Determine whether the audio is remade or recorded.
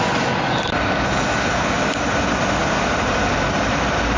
recorded